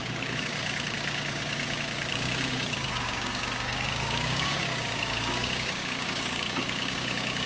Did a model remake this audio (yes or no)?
yes